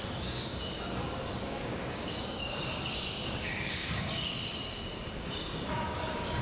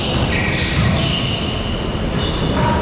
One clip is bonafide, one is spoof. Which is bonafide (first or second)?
second